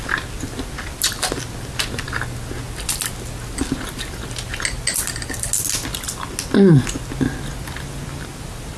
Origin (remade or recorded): recorded